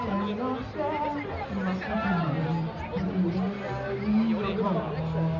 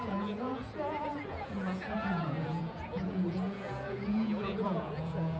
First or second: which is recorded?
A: first